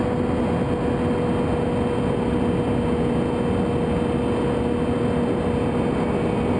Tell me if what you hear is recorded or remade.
recorded